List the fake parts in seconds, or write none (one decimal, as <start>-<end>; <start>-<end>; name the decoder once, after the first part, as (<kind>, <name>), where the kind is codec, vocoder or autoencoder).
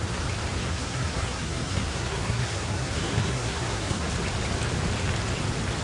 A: 0.6-4.1 (codec, SNAC)